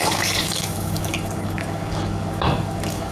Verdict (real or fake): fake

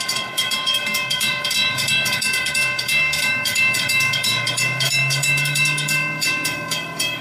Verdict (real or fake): fake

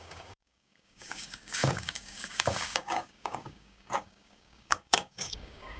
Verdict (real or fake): fake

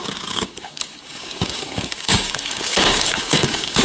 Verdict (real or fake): fake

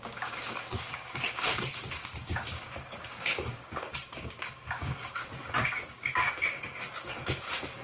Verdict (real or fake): fake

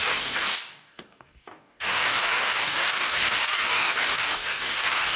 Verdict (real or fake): fake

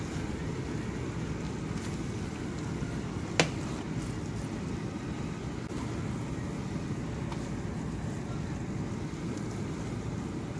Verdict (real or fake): real